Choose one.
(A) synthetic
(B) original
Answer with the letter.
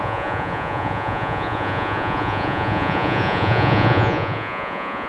A